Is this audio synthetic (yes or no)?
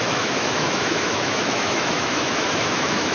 yes